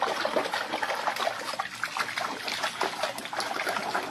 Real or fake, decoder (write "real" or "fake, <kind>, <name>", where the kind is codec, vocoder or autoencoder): real